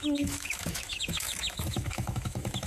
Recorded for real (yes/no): no